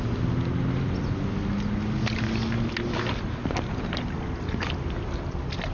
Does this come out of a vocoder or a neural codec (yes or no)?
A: no